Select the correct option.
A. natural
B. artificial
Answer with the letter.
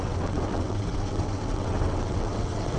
B